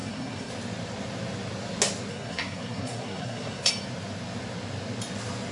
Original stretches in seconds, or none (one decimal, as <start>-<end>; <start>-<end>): 0.5-2.1; 3.7-5.5